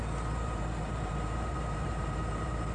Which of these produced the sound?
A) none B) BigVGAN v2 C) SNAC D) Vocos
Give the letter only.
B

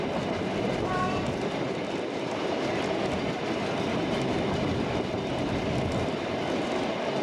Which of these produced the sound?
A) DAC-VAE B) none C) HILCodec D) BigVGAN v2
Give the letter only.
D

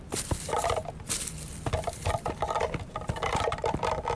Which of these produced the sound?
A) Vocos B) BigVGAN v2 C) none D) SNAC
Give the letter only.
B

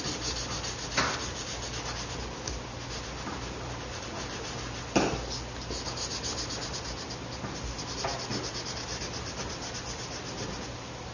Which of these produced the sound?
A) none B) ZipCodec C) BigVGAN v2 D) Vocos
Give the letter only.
A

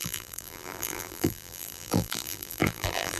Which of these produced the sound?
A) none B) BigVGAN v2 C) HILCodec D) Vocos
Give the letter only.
B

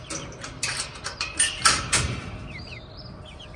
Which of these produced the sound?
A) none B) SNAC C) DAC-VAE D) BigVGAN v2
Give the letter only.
D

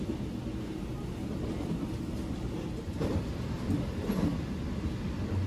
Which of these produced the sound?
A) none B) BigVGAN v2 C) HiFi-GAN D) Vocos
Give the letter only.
A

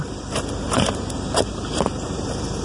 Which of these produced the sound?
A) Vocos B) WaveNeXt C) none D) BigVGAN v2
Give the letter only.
D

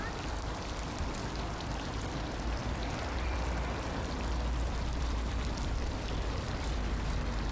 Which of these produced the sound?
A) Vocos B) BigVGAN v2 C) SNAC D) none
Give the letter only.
B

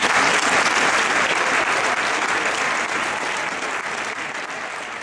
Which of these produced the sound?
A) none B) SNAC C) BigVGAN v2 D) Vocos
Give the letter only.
A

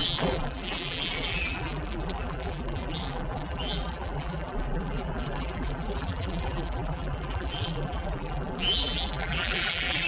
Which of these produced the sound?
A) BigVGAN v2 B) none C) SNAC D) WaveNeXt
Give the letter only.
A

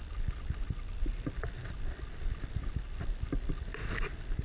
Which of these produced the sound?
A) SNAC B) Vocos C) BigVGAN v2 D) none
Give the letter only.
D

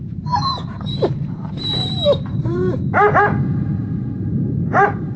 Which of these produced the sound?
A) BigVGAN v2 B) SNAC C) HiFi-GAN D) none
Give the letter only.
A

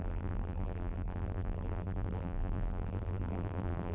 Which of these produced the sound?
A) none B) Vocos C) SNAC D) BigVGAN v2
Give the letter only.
D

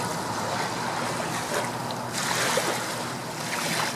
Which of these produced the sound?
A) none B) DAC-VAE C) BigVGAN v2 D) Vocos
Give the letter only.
A